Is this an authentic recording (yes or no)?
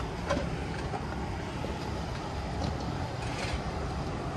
no